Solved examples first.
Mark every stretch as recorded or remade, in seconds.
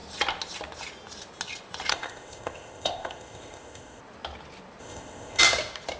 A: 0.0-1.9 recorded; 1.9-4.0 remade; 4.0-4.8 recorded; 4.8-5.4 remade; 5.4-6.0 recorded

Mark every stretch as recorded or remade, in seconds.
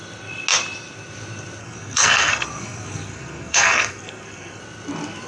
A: 0.0-1.6 recorded; 1.6-4.6 remade; 4.6-5.3 recorded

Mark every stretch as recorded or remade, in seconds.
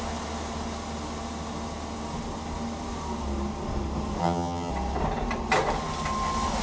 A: 0.0-4.2 recorded; 4.2-4.7 remade; 4.7-6.6 recorded